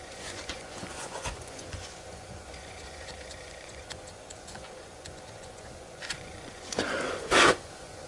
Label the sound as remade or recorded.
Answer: remade